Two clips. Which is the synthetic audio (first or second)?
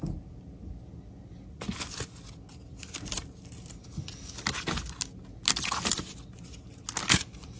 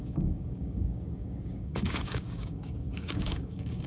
second